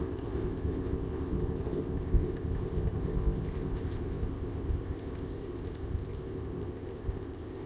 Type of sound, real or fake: fake